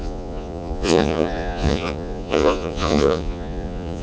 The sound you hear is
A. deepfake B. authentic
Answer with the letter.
A